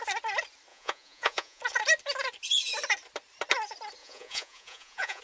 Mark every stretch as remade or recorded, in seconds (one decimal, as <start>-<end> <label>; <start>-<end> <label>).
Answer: 0.0-0.7 recorded; 0.7-1.6 remade; 1.6-4.0 recorded; 4.0-5.2 remade